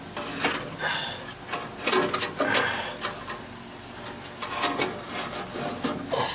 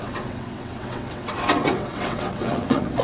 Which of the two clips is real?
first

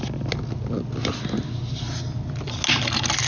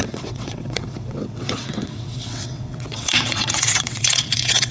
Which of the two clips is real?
first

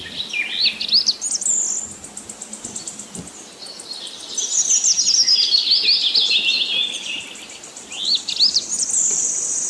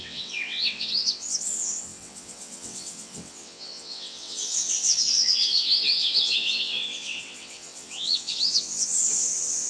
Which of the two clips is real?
first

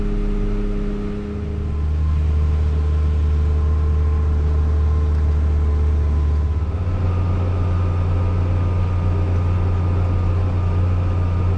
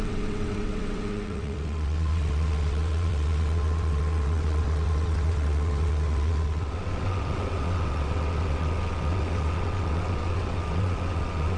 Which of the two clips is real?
first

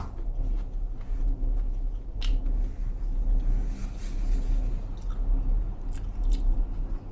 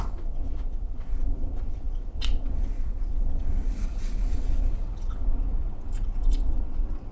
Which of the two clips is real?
first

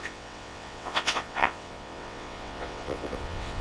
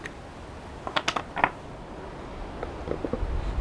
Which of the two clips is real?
second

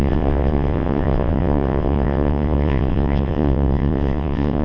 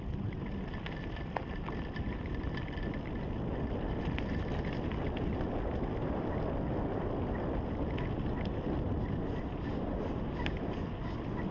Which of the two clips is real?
second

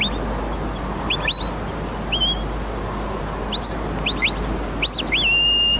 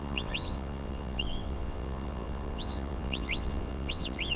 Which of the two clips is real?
first